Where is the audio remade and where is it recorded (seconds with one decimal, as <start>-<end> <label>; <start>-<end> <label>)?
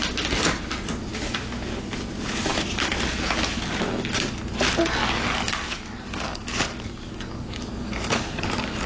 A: 0.0-5.0 recorded; 5.0-8.5 remade; 8.5-8.9 recorded